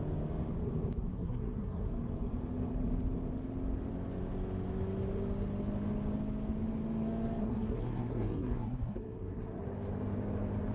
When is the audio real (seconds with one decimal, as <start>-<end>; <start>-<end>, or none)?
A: 0.0-1.1; 1.9-7.4; 9.6-10.7

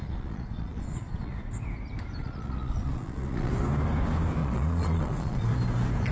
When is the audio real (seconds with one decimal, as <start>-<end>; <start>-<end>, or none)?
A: 1.5-2.2; 3.5-4.4; 5.5-6.1

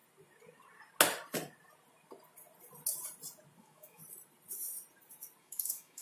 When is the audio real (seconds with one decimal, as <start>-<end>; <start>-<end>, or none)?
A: 0.0-3.6; 4.0-5.4

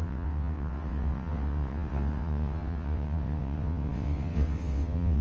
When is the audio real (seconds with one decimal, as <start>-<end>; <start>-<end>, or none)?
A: none